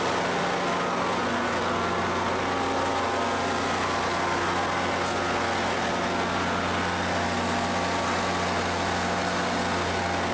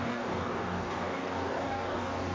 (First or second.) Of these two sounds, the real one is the first